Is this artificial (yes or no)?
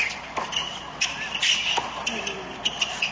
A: no